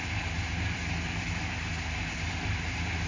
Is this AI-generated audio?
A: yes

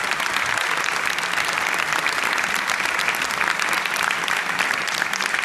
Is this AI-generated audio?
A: yes